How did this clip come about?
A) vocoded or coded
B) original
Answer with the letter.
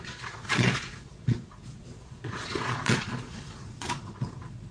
A